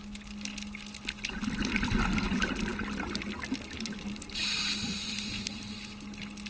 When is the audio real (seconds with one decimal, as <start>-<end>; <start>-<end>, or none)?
0.0-6.5